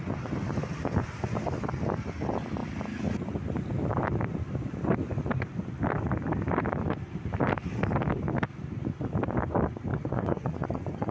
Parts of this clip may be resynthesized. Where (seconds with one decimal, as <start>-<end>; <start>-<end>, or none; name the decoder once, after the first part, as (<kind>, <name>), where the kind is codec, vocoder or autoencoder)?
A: 9.9-11.1 (vocoder, Vocos)